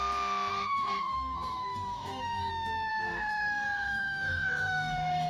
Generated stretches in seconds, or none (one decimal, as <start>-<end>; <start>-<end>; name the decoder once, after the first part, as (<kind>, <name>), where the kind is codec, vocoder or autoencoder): 0.5-2.5 (codec, DAC); 2.9-5.3